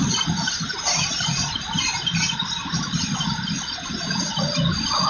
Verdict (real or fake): real